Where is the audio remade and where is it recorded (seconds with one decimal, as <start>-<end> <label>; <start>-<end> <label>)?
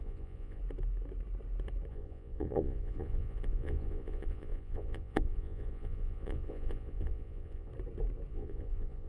0.0-0.6 remade; 0.6-1.9 recorded; 1.9-7.7 remade; 7.7-8.3 recorded; 8.3-9.1 remade